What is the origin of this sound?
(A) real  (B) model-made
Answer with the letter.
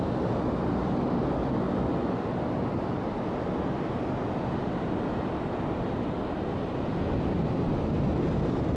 A